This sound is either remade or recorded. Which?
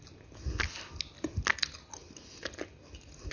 recorded